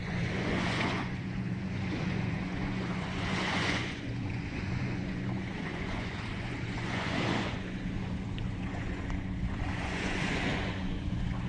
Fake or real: fake